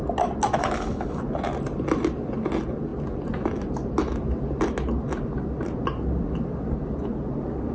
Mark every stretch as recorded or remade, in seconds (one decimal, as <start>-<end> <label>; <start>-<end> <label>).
0.0-0.6 recorded; 0.6-1.2 remade; 1.2-7.7 recorded